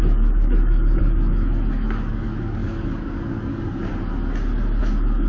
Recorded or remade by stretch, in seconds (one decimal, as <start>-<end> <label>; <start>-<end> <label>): 0.0-3.8 remade; 3.8-4.8 recorded; 4.8-5.3 remade